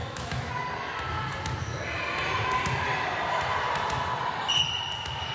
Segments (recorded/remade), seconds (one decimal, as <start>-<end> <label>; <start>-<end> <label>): 0.0-0.5 remade; 0.5-5.3 recorded